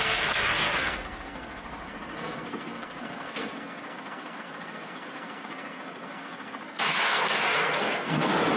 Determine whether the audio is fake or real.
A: fake